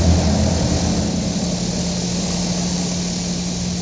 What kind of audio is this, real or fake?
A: real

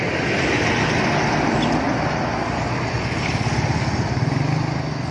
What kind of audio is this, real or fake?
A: real